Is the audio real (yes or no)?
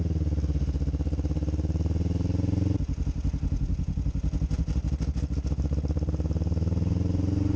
yes